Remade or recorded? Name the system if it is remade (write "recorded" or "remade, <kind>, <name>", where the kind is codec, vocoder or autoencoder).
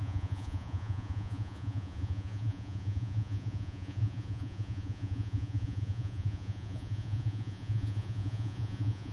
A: remade, vocoder, Vocos